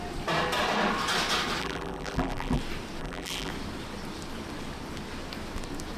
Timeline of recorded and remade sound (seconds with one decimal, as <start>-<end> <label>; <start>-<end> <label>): 0.0-1.6 recorded; 1.6-2.6 remade; 2.6-3.0 recorded; 3.0-3.5 remade; 3.5-6.0 recorded

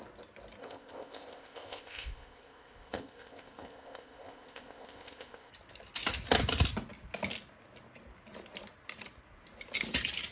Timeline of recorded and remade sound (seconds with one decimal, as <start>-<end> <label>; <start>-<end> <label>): 0.0-0.6 recorded; 0.6-5.5 remade; 5.5-10.3 recorded

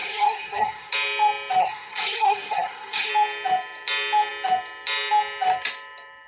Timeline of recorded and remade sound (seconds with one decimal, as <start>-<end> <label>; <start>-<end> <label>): 0.0-0.9 remade; 0.9-1.6 recorded; 1.6-3.1 remade; 3.1-6.3 recorded

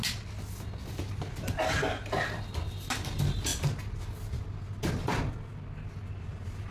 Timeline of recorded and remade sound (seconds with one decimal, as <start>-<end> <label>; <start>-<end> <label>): 0.0-6.7 recorded

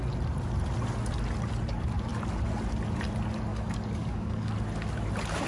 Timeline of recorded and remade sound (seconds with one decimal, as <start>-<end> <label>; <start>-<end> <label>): 0.0-3.5 recorded; 3.5-4.5 remade; 4.5-5.5 recorded

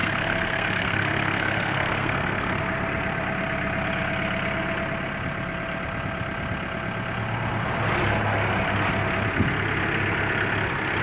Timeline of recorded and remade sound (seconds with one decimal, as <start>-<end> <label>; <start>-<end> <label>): 0.0-2.6 remade; 2.6-11.0 recorded

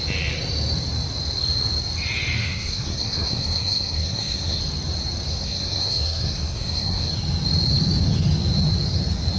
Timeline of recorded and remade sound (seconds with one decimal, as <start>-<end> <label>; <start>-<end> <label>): 0.0-2.4 recorded; 2.4-4.6 remade; 4.6-5.3 recorded; 5.3-7.1 remade; 7.1-9.4 recorded